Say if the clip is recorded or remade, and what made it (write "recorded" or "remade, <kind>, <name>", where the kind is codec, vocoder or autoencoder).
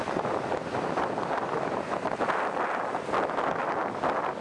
recorded